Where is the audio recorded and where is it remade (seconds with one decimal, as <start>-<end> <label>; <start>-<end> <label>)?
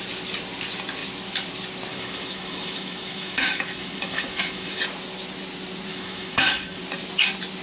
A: 0.0-1.9 recorded; 1.9-4.8 remade; 4.8-5.9 recorded; 5.9-6.8 remade; 6.8-7.6 recorded